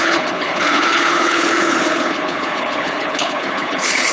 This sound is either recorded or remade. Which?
remade